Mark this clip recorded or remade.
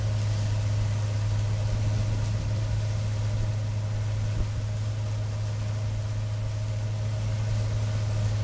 recorded